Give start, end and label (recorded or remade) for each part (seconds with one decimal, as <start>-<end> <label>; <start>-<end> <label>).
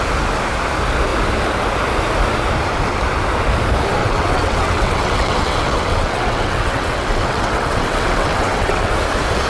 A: 0.0-4.0 recorded; 4.0-8.9 remade; 8.9-9.5 recorded